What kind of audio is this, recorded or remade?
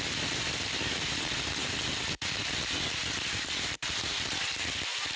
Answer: recorded